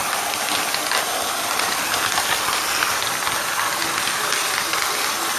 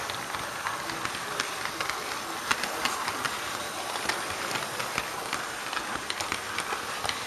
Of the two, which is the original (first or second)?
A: first